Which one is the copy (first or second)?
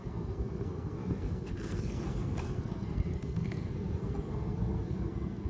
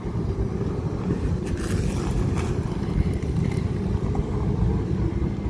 first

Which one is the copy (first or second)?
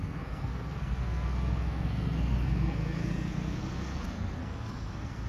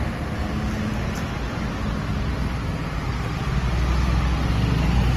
first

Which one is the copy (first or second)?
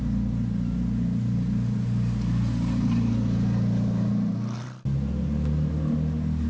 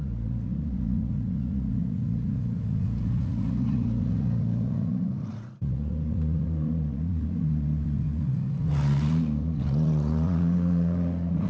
second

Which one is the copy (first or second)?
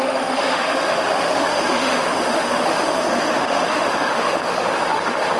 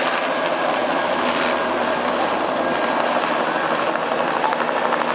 first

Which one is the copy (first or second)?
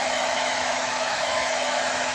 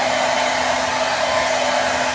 first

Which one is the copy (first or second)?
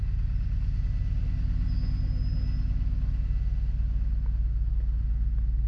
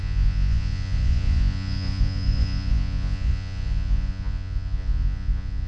second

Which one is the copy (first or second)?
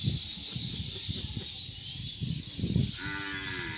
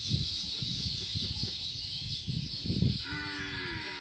second